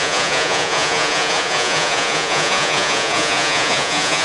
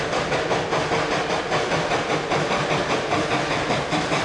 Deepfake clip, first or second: first